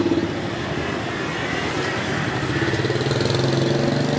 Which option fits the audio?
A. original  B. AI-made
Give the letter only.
A